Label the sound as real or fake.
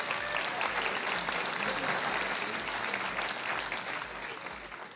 real